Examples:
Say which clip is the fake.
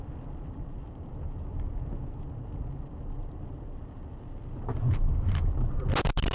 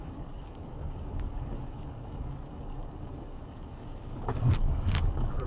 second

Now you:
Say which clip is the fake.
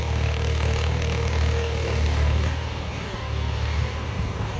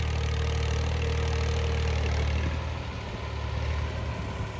first